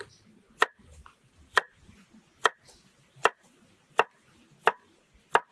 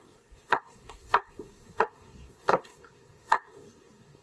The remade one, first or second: second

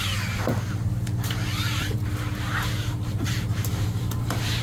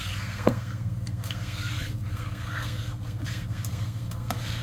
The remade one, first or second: second